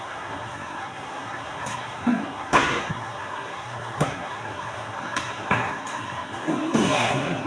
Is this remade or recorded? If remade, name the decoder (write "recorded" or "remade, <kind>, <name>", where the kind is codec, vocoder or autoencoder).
remade, codec, SNAC